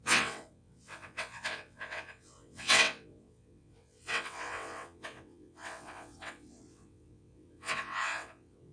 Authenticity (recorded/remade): remade